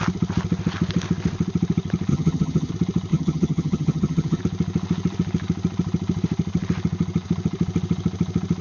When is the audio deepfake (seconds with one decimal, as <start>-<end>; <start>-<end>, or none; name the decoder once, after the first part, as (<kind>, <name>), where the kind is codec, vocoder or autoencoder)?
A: 2.1-2.7 (vocoder, HiFi-GAN); 3.1-4.4